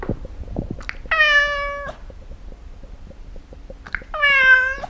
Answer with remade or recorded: recorded